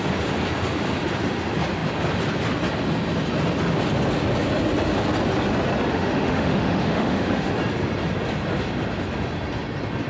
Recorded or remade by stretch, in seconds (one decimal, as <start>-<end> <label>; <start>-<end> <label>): 0.0-5.9 recorded; 5.9-7.5 remade; 7.5-10.1 recorded